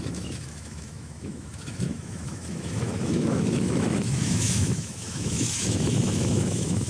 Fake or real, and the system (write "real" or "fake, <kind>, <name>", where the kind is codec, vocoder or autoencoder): fake, autoencoder, DAC-VAE